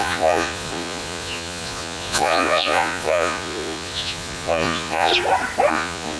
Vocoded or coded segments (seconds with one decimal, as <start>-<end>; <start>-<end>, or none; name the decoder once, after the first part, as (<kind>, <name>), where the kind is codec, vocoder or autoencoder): 0.0-5.1 (vocoder, Vocos); 5.7-6.2